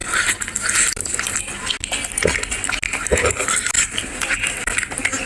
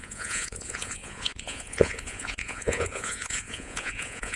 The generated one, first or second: second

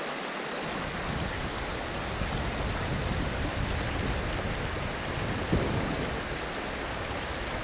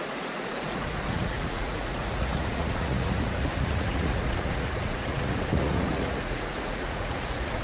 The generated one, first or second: second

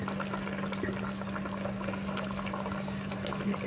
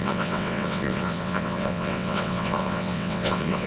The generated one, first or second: second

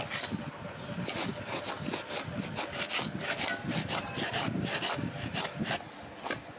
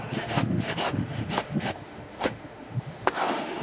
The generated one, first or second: second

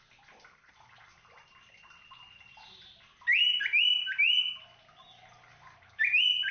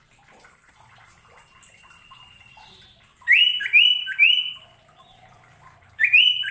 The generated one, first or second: second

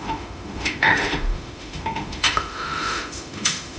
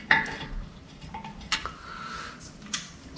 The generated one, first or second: first